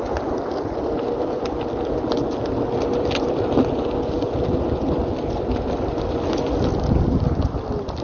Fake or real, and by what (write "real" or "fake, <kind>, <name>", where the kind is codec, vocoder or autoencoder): real